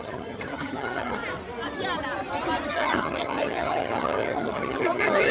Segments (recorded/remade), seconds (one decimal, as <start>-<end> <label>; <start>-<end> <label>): 0.0-1.2 remade; 1.2-2.7 recorded; 2.7-5.3 remade